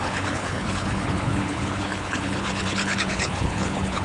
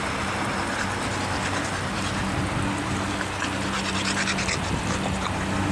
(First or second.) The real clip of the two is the second